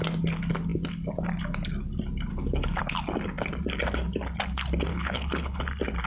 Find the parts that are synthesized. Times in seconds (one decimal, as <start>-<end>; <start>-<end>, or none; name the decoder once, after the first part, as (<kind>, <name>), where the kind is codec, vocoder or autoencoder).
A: 2.3-2.8 (codec, HILCodec); 4.9-5.6